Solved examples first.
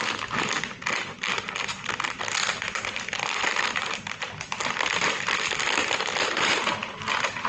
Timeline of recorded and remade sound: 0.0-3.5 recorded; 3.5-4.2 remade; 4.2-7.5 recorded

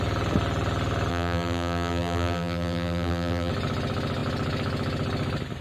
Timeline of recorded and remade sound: 0.0-1.1 recorded; 1.1-3.5 remade; 3.5-5.6 recorded

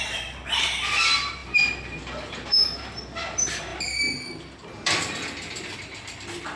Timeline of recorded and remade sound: 0.0-1.4 recorded; 1.4-2.0 remade; 2.0-3.7 recorded; 3.7-6.6 remade